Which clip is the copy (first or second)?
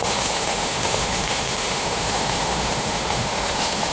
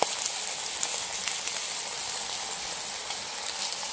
first